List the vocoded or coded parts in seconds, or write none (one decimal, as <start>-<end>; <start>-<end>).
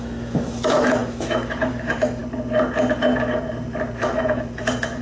0.0-2.2; 4.0-5.0